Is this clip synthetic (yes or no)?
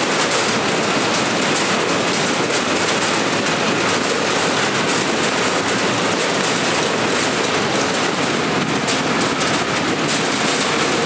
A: no